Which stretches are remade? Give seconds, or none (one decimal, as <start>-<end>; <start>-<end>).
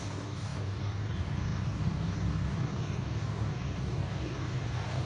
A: 0.0-5.1